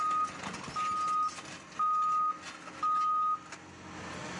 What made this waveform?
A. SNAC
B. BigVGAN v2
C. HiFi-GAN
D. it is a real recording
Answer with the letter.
D